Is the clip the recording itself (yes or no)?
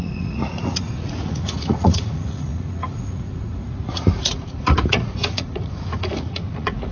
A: no